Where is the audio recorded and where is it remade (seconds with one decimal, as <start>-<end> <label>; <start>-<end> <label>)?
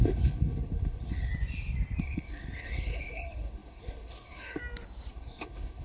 0.0-1.3 remade; 1.3-2.0 recorded; 2.0-4.6 remade; 4.6-5.1 recorded; 5.1-5.8 remade